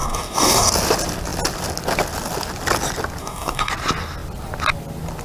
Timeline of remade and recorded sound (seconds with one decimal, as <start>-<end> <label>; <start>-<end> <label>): 0.0-0.7 remade; 0.7-3.2 recorded; 3.2-3.7 remade; 3.7-5.2 recorded